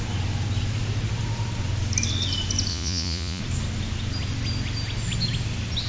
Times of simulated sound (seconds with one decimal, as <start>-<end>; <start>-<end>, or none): 2.7-3.4